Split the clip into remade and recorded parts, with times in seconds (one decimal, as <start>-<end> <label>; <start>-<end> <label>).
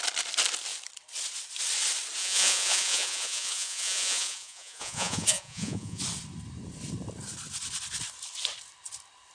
0.0-2.2 recorded; 2.2-6.0 remade; 6.0-9.3 recorded